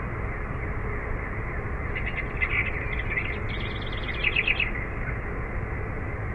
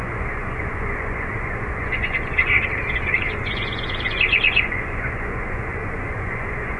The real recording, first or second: first